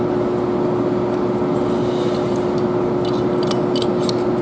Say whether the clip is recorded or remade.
recorded